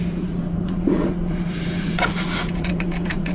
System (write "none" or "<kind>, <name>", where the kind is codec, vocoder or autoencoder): vocoder, Vocos